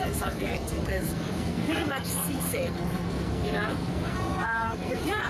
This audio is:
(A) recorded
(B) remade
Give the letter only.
B